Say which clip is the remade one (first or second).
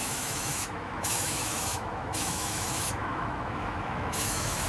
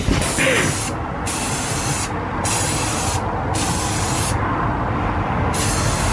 first